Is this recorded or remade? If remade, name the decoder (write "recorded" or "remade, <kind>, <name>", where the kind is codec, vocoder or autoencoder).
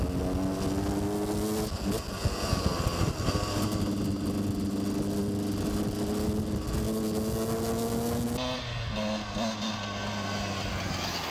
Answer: recorded